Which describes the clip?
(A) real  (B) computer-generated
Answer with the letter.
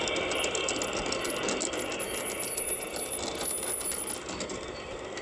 A